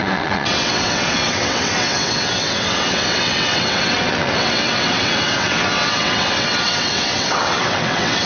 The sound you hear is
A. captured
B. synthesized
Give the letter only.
B